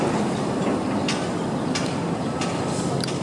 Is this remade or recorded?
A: recorded